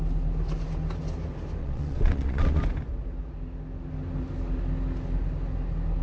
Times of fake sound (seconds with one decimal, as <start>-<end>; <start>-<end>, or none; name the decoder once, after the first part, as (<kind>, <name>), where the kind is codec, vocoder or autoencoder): 1.6-2.6 (vocoder, WaveNeXt)